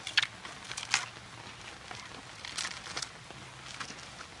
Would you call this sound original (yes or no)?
yes